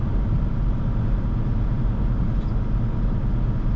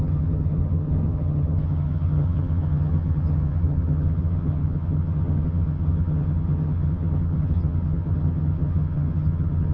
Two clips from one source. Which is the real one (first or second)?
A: first